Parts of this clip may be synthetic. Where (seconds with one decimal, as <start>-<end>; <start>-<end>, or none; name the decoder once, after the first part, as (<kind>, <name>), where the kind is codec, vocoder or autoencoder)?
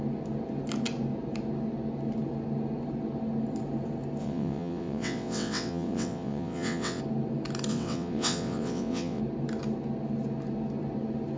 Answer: 4.2-7.0 (vocoder, WaveNeXt); 7.7-9.2